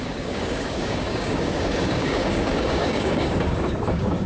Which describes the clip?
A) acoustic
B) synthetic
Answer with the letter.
B